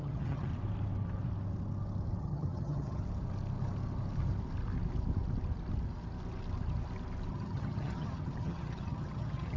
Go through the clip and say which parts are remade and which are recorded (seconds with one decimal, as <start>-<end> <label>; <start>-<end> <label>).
0.0-0.5 remade; 0.5-2.2 recorded; 2.2-3.0 remade; 3.0-7.3 recorded; 7.3-9.6 remade